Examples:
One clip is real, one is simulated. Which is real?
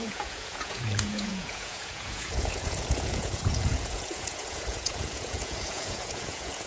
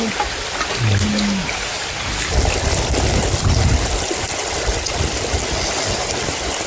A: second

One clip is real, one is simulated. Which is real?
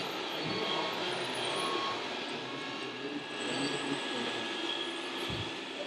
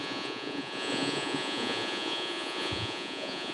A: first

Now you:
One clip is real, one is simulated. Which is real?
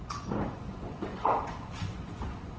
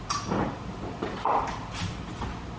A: second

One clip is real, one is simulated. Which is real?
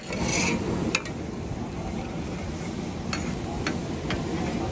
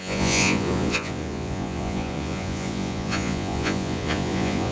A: first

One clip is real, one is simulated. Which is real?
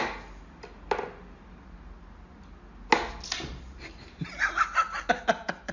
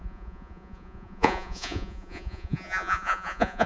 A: first